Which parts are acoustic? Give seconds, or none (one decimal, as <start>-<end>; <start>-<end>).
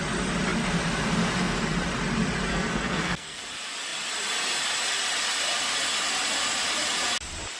0.0-2.5; 3.4-7.6